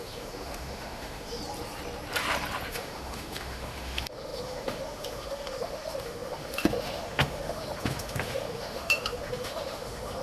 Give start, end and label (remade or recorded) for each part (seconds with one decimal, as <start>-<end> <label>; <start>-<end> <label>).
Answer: 0.0-1.4 remade; 1.4-2.7 recorded; 2.7-10.2 remade